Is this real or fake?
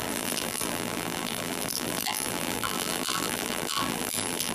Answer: fake